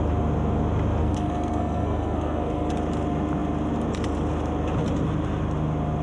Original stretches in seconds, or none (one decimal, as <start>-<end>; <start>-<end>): 0.0-1.0; 2.7-6.0